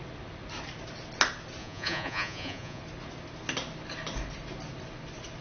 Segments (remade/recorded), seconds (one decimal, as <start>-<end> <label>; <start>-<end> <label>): 0.0-1.6 recorded; 1.6-2.8 remade; 2.8-5.4 recorded